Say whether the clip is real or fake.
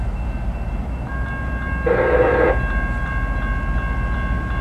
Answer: real